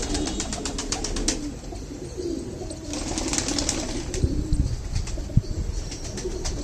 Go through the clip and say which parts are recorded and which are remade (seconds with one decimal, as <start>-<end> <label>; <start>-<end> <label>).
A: 0.0-6.6 recorded